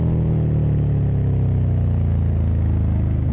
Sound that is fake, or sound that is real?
real